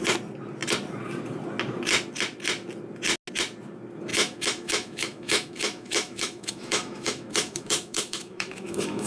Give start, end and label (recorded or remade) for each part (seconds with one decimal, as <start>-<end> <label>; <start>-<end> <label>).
0.0-4.1 recorded; 4.1-9.1 remade